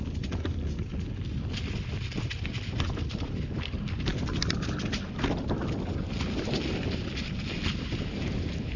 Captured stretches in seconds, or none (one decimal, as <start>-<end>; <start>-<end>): 0.0-8.8